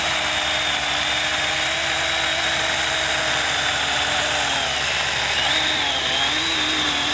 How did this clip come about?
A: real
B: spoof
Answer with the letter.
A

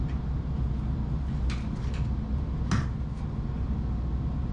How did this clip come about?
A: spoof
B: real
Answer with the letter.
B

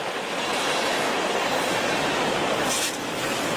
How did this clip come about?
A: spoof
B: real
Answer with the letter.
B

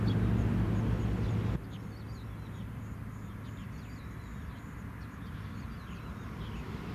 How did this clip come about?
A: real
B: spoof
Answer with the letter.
A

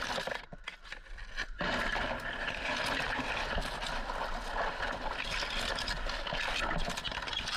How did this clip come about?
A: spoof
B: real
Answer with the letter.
B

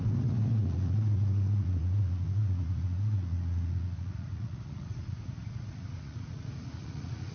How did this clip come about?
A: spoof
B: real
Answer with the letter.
A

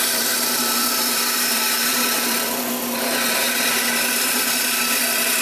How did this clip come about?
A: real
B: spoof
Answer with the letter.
B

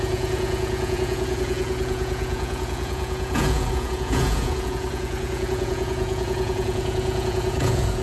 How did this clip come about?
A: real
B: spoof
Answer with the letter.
B